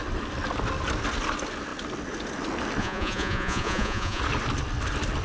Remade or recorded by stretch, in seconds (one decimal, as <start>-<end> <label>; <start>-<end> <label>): 0.0-2.8 recorded; 2.8-4.2 remade; 4.2-5.2 recorded